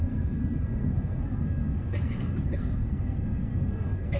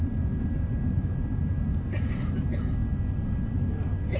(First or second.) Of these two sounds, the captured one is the second